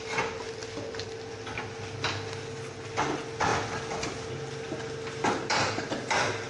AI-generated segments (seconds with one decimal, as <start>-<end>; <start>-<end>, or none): none